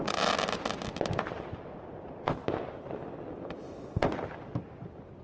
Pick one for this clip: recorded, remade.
recorded